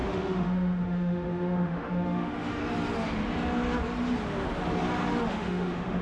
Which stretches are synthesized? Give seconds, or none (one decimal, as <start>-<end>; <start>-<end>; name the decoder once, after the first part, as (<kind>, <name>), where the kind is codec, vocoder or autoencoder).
0.0-2.6 (autoencoder, DAC-VAE); 5.3-6.0